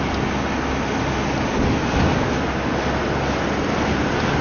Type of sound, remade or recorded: recorded